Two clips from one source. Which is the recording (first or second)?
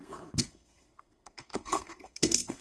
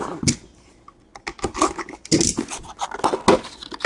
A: second